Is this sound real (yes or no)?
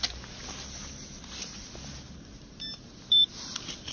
yes